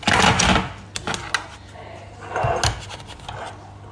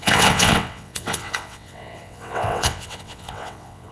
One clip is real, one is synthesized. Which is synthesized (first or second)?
second